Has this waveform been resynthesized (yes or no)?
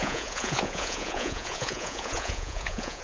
yes